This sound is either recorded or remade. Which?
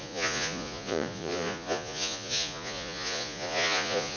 remade